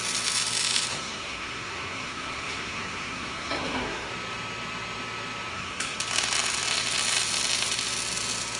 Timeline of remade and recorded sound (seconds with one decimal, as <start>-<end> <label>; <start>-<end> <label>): 0.0-0.9 recorded; 0.9-4.1 remade; 4.1-5.5 recorded; 5.5-6.0 remade; 6.0-8.6 recorded